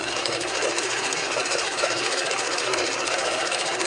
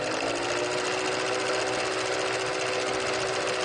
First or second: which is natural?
second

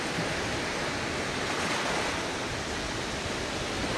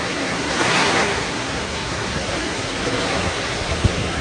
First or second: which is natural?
first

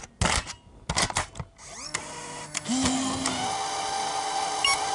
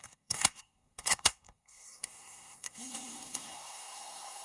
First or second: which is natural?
first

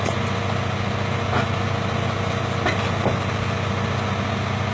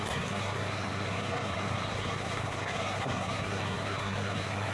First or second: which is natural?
first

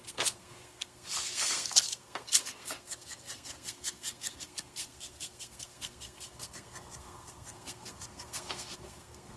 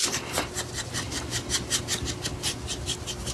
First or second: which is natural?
second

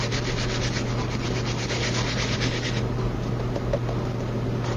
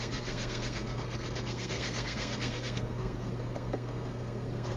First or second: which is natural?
first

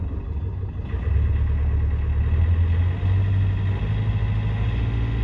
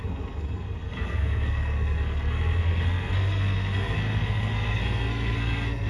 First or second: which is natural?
first